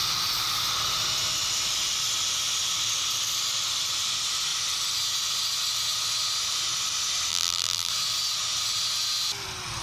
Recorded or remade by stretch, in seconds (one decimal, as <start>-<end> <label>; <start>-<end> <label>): 0.0-7.3 recorded; 7.3-7.9 remade; 7.9-9.8 recorded